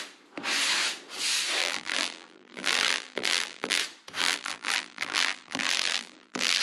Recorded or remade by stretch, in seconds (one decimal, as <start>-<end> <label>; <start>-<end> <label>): 0.0-1.6 recorded; 1.6-3.8 remade; 3.8-4.2 recorded; 4.2-6.6 remade